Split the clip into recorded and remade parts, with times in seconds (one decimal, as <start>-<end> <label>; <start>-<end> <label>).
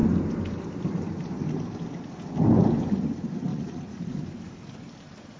0.0-3.5 recorded; 3.5-4.1 remade; 4.1-5.4 recorded